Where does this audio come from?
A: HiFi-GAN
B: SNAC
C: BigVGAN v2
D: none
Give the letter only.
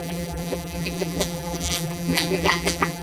C